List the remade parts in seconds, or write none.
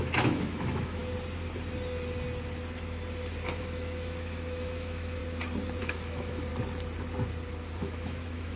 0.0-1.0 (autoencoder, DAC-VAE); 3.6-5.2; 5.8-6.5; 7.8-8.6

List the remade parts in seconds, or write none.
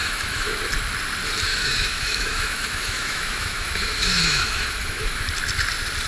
0.0-0.6 (autoencoder, DAC-VAE); 1.5-5.2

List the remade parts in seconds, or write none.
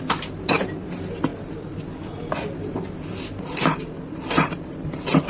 none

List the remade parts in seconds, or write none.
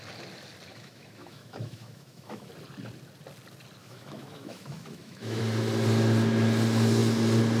0.7-2.5 (autoencoder, DAC-VAE); 3.8-5.4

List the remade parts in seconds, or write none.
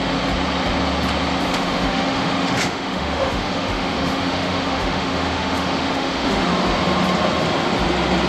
1.5-6.5 (autoencoder, DAC-VAE)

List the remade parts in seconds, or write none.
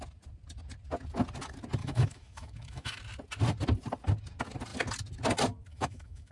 1.8-3.0 (autoencoder, DAC-VAE); 5.7-6.3